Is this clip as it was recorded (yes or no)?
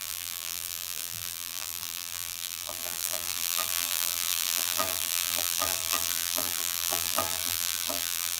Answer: no